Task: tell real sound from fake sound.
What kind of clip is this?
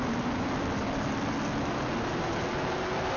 real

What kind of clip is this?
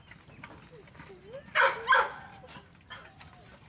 real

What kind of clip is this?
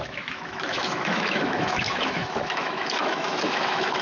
fake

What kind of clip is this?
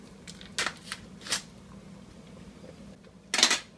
real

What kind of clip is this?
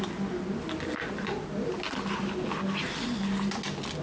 real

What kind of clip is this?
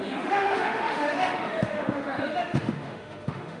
fake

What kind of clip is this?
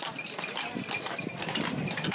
real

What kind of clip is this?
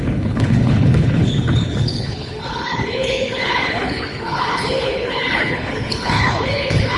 fake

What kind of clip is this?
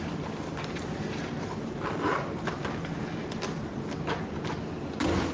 real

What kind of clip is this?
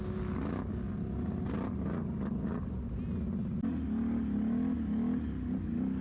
real